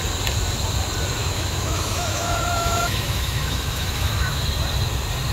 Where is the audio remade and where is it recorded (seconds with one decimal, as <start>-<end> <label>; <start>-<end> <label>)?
0.0-1.2 recorded; 1.2-4.4 remade; 4.4-5.3 recorded